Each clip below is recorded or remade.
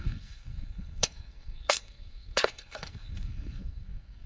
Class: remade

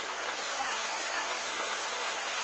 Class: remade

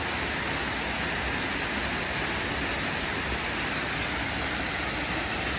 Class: recorded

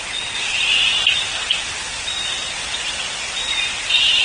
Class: recorded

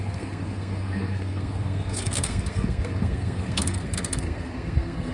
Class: remade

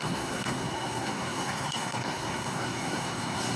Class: remade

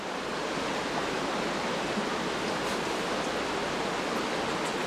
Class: recorded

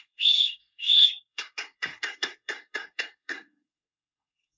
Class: remade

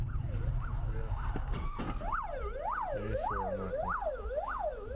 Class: recorded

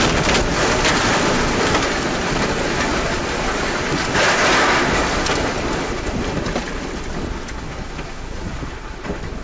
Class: recorded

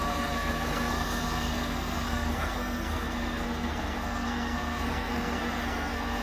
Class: remade